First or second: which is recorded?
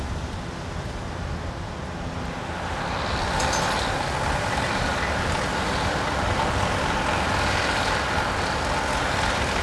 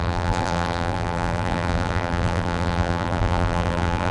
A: first